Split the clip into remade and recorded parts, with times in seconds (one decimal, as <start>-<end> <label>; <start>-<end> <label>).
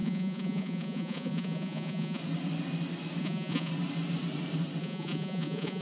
0.0-2.2 remade; 2.2-3.2 recorded; 3.2-3.7 remade; 3.7-4.8 recorded; 4.8-5.8 remade